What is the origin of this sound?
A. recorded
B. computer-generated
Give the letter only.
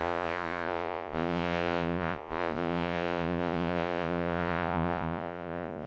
B